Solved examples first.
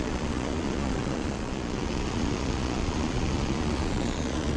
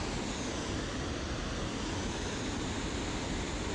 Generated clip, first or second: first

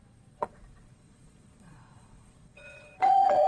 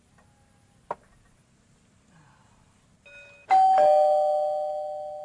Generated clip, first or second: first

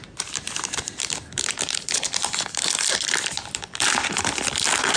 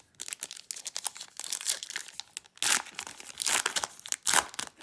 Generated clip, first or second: first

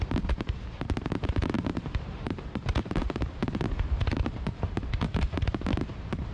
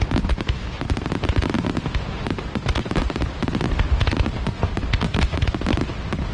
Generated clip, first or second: first